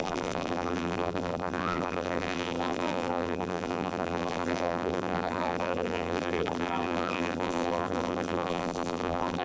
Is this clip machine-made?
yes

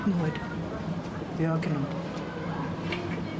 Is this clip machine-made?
yes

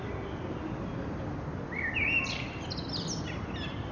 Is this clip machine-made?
no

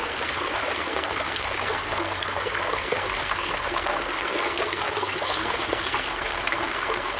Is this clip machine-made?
yes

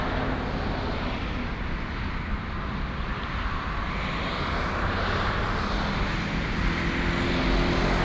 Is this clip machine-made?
no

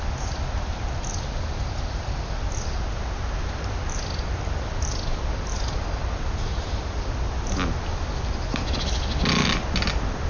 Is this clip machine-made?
no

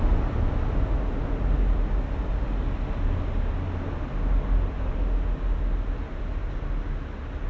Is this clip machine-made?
no